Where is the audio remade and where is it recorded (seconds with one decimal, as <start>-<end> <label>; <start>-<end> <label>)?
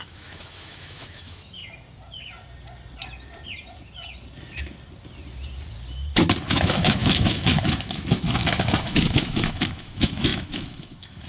0.0-1.6 remade; 1.6-6.5 recorded; 6.5-11.3 remade